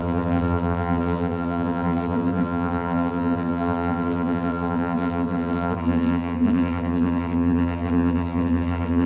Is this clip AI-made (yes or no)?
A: yes